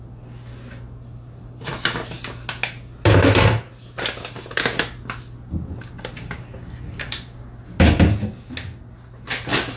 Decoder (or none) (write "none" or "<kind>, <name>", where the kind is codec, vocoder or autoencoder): none